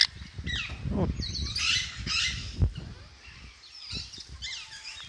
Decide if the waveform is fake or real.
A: real